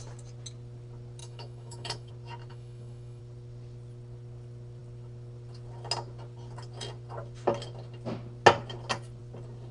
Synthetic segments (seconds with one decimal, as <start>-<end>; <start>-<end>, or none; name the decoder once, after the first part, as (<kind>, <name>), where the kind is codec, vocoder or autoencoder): 1.2-2.1 (autoencoder, DAC-VAE); 2.5-3.2